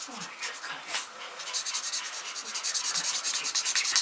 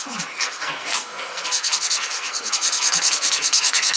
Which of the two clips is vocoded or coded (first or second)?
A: second